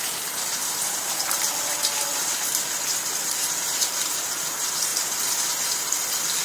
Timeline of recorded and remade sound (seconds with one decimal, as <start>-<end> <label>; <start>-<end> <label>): 0.0-6.4 recorded